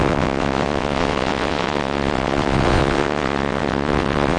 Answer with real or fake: fake